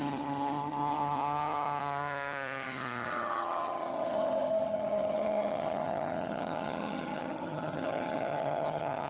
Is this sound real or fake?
fake